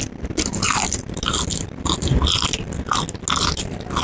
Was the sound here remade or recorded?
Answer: recorded